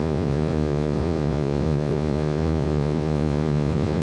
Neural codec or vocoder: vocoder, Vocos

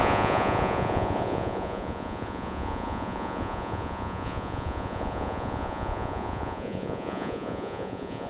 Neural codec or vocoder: vocoder, Vocos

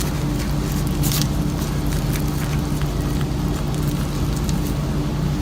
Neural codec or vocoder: none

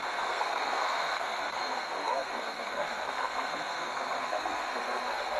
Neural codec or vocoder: codec, SNAC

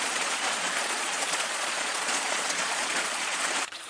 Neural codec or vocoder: vocoder, Vocos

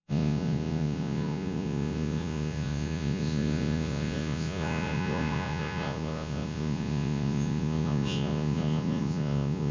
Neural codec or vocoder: vocoder, Vocos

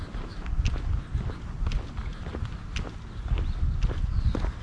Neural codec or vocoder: none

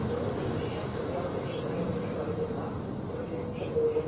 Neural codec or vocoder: none